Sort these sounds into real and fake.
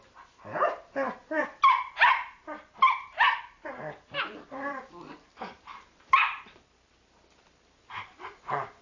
fake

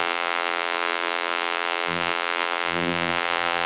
fake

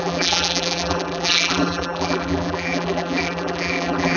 fake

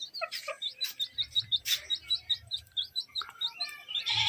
fake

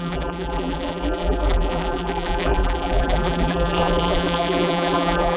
fake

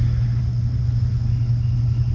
real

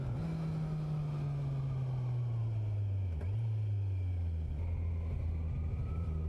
real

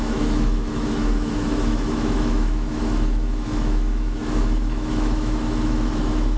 fake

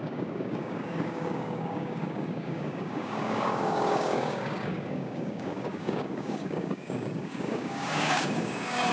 fake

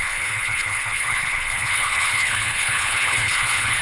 fake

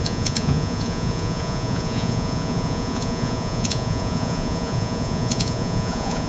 fake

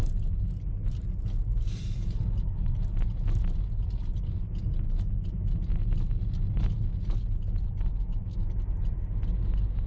real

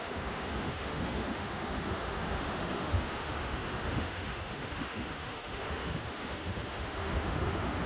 fake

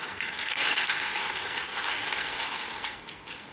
fake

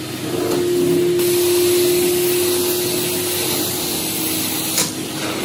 real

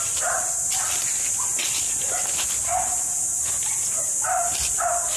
real